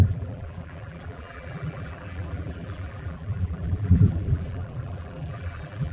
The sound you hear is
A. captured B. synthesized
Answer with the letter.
B